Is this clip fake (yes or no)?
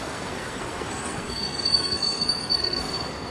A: yes